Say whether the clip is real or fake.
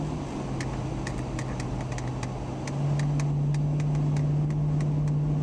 real